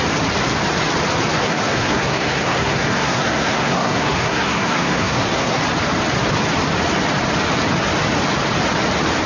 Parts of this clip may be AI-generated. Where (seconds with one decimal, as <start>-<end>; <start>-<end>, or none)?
1.4-5.6